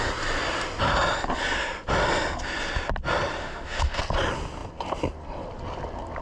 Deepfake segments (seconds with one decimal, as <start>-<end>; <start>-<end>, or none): 3.4-4.0